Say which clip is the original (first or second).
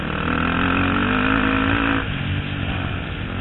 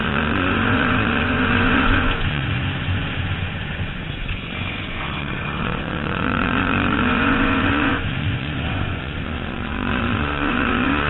first